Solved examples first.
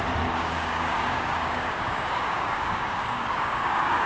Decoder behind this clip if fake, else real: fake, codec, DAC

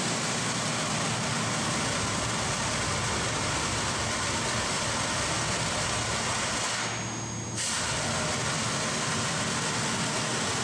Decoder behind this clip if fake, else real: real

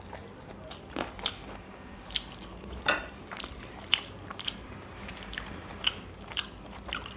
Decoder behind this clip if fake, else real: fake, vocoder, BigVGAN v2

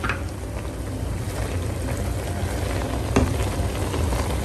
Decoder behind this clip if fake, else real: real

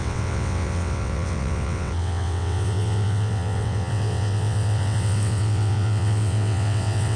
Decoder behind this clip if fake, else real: fake, vocoder, WaveNeXt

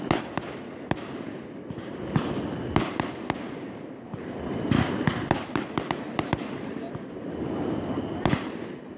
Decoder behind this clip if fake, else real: real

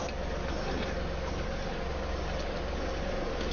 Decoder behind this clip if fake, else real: real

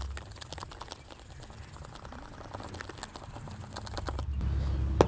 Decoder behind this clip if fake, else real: real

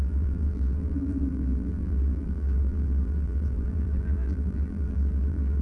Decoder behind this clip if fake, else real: fake, vocoder, BigVGAN v2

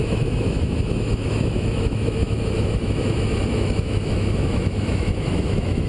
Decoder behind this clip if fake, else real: fake, autoencoder, DAC-VAE